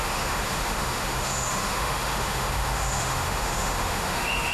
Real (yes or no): no